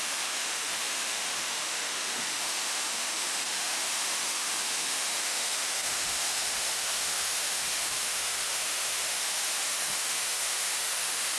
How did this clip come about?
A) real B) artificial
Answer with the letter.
B